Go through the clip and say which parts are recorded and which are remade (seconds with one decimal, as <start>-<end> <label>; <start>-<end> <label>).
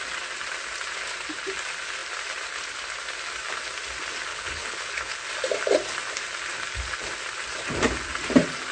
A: 0.0-4.3 recorded; 4.3-5.3 remade; 5.3-8.7 recorded